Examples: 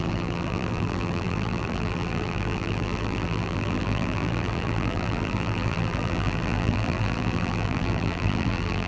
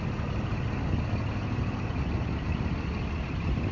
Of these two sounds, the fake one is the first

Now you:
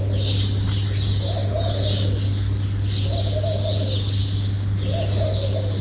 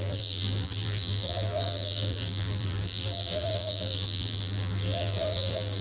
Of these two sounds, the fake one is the second